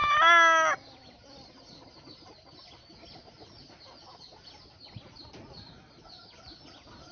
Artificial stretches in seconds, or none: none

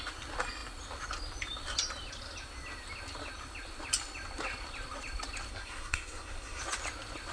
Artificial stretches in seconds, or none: 5.5-6.6 (codec, SNAC)